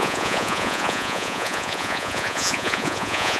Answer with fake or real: fake